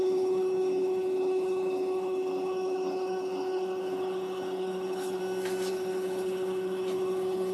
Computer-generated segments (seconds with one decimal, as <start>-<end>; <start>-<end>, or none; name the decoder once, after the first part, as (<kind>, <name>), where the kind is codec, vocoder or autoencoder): 0.0-5.2 (codec, HILCodec); 5.7-7.5